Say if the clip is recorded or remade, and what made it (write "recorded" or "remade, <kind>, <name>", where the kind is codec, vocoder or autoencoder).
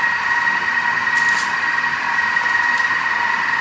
recorded